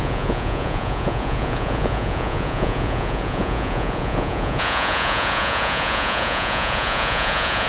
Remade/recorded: remade